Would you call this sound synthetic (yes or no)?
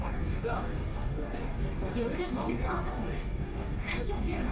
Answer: yes